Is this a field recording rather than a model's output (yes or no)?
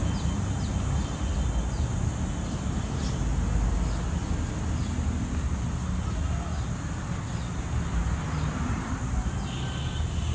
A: yes